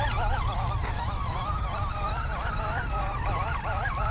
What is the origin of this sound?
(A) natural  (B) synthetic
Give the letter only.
A